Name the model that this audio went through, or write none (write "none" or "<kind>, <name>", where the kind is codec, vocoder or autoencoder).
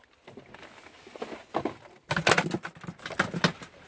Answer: none